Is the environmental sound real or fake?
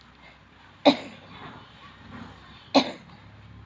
real